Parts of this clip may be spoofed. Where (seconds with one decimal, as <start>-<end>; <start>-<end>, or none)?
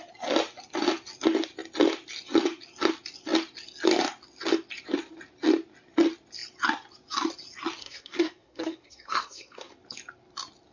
7.8-9.7